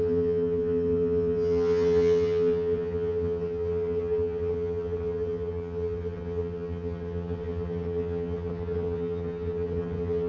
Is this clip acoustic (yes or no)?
no